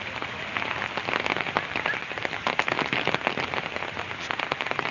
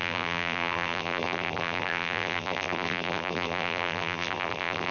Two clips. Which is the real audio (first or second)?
first